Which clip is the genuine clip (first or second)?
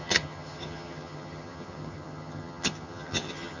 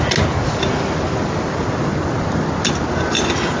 second